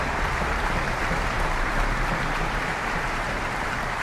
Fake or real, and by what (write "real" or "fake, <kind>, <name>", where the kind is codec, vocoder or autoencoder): fake, vocoder, BigVGAN v2